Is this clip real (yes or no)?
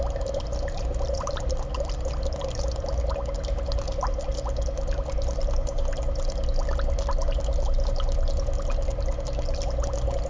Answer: yes